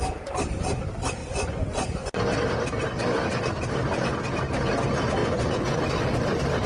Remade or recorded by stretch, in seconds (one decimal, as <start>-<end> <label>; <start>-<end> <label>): 0.0-1.2 recorded; 1.2-2.2 remade; 2.2-5.2 recorded; 5.2-5.8 remade; 5.8-6.7 recorded